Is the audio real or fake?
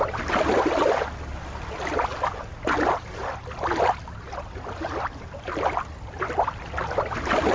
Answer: real